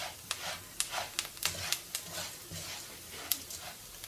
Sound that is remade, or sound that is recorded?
recorded